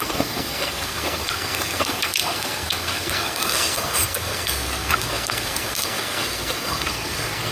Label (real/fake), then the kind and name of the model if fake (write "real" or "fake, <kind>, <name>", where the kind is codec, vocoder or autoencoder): fake, codec, SNAC